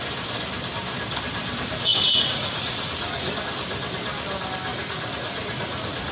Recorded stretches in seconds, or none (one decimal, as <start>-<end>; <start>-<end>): 0.0-1.9; 3.4-4.7